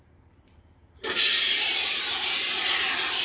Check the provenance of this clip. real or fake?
fake